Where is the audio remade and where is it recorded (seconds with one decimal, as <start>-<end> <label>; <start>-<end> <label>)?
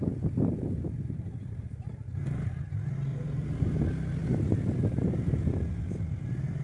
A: 0.0-1.4 recorded; 1.4-2.2 remade; 2.2-3.1 recorded; 3.1-3.8 remade; 3.8-4.2 recorded; 4.2-5.5 remade; 5.5-6.6 recorded